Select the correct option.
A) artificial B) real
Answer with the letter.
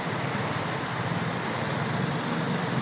B